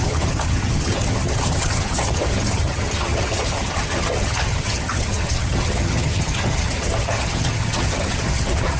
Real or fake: fake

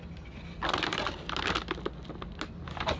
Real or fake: real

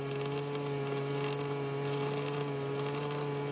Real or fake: real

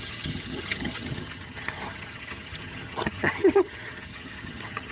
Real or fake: fake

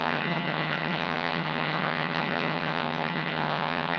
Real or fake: fake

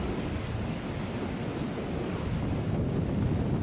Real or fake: real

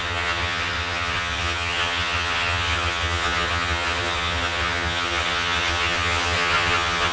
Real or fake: fake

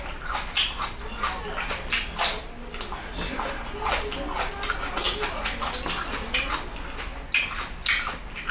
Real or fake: real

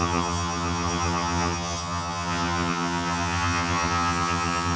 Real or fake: fake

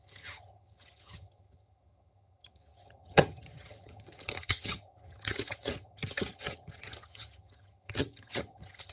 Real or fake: fake